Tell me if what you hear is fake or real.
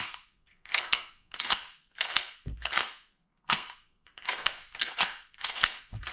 fake